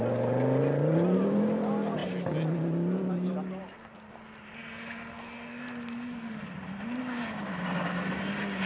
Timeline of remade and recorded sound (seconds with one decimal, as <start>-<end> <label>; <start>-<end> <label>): 0.0-8.7 recorded